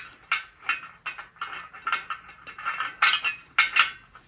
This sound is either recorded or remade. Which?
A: recorded